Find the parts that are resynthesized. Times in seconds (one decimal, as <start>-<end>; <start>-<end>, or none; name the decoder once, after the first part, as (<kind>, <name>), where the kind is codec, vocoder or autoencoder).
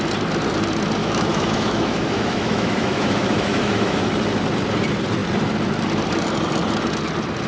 1.0-4.0 (autoencoder, DAC-VAE)